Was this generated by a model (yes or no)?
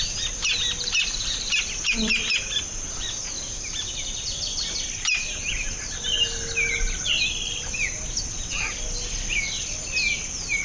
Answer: no